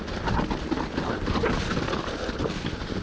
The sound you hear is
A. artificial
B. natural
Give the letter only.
B